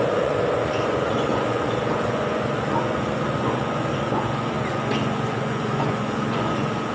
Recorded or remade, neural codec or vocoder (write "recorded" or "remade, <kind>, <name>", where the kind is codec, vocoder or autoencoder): remade, vocoder, Vocos